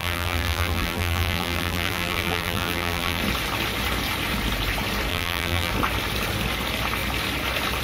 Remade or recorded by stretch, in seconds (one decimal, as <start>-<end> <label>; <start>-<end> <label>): 0.0-3.2 remade; 3.2-5.1 recorded; 5.1-5.7 remade; 5.7-7.8 recorded